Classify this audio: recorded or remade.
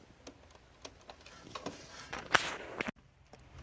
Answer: recorded